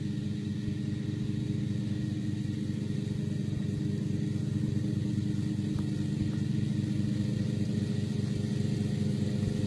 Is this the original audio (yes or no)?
yes